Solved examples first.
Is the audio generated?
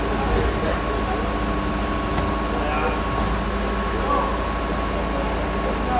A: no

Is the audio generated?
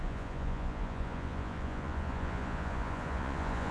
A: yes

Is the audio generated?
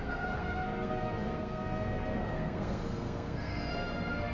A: yes